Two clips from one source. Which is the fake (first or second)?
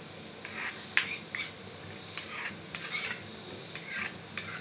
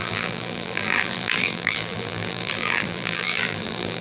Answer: second